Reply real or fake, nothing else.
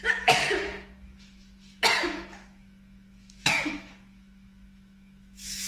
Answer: fake